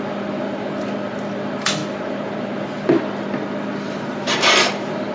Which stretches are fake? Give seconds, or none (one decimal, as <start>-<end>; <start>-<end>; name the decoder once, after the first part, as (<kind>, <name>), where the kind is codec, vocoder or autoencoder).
none